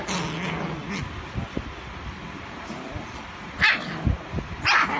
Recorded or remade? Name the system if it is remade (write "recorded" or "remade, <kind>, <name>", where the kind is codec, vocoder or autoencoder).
recorded